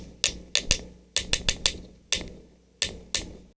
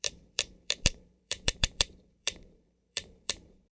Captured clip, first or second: first